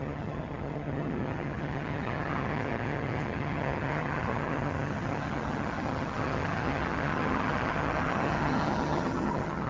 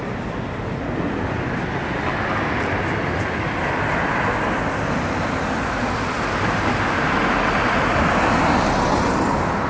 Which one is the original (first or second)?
second